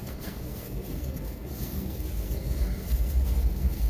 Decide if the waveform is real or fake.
fake